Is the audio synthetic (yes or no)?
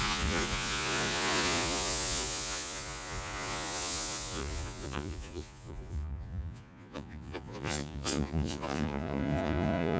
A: yes